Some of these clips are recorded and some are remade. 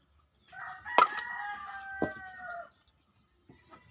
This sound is recorded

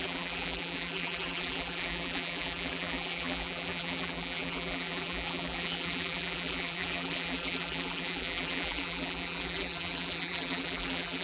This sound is remade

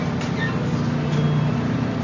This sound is recorded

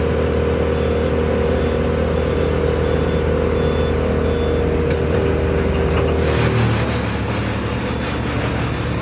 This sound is recorded